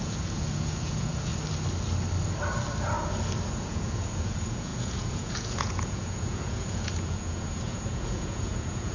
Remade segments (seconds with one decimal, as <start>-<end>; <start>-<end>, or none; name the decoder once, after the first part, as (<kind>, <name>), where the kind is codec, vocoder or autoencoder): 0.0-1.3 (vocoder, Vocos); 3.5-8.9